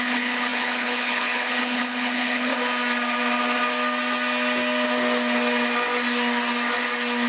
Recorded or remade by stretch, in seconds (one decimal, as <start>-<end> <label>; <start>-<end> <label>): 0.0-2.5 remade; 2.5-7.3 recorded